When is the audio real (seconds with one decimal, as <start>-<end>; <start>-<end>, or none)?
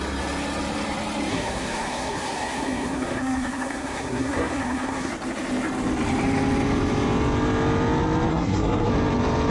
0.0-1.3; 5.1-8.3; 8.9-9.5